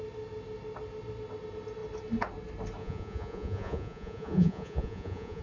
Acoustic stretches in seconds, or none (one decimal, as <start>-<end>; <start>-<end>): 0.0-2.8